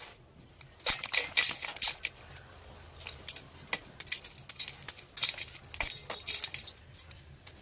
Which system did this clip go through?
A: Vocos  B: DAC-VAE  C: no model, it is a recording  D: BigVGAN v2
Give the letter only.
C